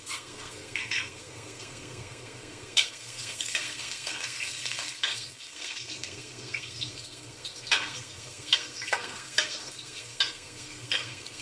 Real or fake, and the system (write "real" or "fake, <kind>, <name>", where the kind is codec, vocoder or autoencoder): fake, codec, SNAC